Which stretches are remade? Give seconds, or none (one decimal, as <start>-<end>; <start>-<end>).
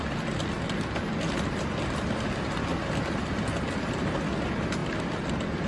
none